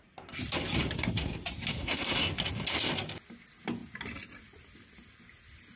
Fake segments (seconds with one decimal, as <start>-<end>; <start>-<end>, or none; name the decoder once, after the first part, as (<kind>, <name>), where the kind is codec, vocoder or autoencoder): 1.7-2.3 (codec, SNAC)